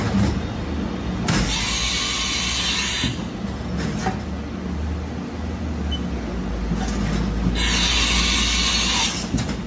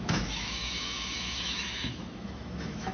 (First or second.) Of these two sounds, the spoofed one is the second